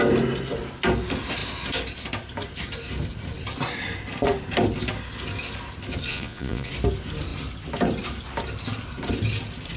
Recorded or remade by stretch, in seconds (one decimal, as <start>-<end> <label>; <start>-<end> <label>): 0.0-6.1 recorded; 6.1-6.7 remade; 6.7-9.8 recorded